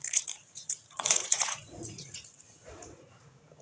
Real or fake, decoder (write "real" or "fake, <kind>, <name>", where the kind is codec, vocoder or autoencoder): fake, vocoder, Vocos